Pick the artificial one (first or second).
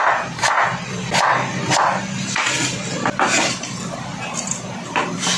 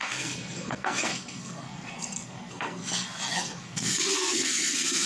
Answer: second